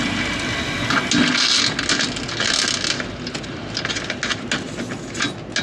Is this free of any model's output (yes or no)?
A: yes